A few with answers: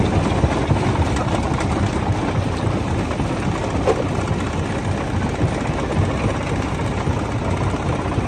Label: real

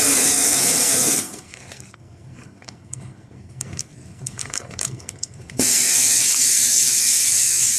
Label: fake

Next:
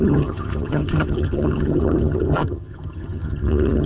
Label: fake